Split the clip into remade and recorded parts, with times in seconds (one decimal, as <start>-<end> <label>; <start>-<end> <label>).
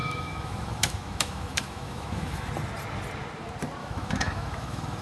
0.0-2.5 remade; 2.5-3.8 recorded; 3.8-5.0 remade